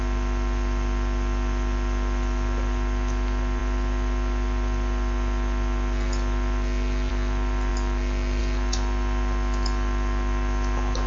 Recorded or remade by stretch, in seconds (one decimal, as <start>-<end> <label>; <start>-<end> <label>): 0.0-11.1 recorded